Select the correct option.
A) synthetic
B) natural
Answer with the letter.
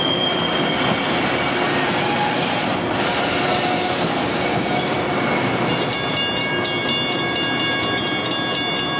B